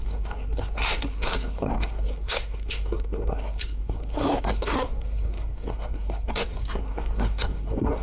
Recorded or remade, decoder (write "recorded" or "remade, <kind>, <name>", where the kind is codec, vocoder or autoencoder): remade, codec, SNAC